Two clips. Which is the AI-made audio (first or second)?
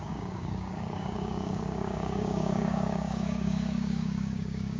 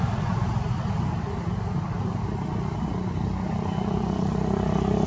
first